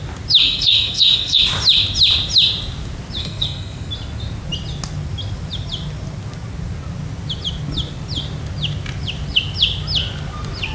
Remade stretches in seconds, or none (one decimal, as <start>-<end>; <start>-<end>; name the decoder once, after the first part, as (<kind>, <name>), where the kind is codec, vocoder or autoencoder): 0.4-1.4 (codec, SNAC); 3.2-3.9